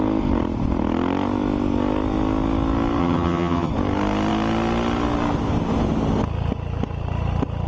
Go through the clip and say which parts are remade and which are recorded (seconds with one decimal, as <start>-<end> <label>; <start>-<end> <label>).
0.0-3.0 recorded; 3.0-3.7 remade; 3.7-7.7 recorded